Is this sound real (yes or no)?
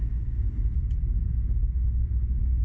yes